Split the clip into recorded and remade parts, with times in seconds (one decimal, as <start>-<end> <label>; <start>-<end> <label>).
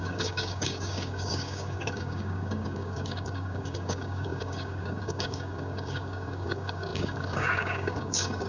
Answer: 0.0-8.5 remade